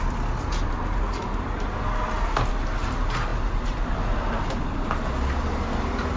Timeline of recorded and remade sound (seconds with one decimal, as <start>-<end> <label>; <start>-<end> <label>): 0.0-6.2 recorded